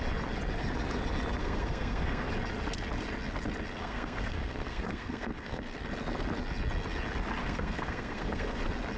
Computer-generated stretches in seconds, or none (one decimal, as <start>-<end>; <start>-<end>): 1.4-2.3; 3.8-5.6; 7.4-8.6